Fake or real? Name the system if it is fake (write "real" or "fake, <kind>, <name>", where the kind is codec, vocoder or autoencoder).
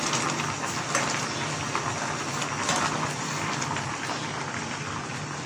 real